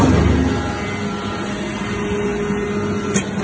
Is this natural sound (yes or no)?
yes